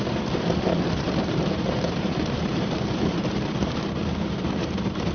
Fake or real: fake